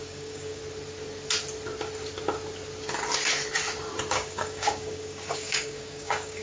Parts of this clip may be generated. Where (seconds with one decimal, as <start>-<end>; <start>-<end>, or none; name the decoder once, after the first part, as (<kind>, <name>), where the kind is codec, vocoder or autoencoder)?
0.0-0.6 (codec, DAC); 4.1-6.4